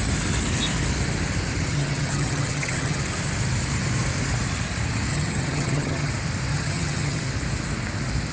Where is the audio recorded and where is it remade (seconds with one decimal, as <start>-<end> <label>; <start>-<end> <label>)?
0.0-1.7 recorded; 1.7-3.0 remade; 3.0-5.1 recorded; 5.1-6.1 remade; 6.1-6.5 recorded; 6.5-7.2 remade; 7.2-8.3 recorded